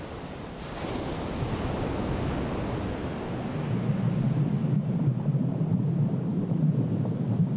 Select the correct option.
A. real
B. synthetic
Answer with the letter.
A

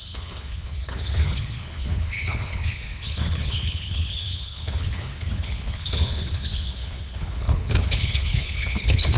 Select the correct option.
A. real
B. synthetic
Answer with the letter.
B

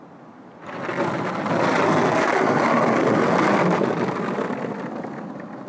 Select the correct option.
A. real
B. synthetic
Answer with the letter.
A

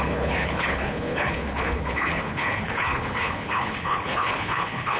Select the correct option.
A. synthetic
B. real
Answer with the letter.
A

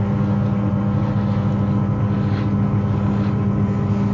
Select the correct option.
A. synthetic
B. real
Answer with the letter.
B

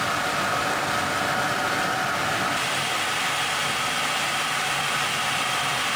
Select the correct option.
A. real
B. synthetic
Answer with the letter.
A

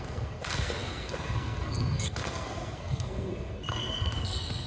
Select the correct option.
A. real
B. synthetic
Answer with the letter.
B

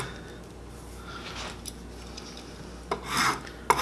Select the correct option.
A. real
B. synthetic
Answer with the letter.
A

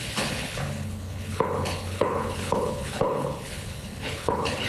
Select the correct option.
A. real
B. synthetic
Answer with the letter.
B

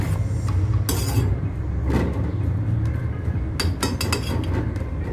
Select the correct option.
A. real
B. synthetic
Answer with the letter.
A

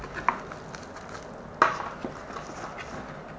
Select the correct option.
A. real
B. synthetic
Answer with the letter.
A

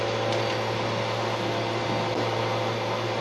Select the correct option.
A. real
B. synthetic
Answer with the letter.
A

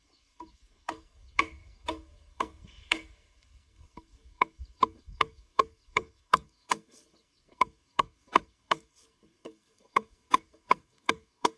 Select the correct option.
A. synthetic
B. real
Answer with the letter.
A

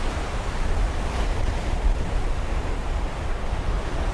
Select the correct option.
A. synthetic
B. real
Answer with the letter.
B